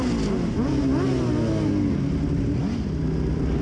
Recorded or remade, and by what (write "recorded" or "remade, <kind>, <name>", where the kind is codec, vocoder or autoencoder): recorded